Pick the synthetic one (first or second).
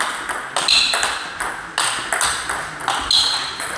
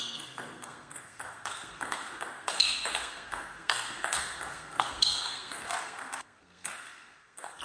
second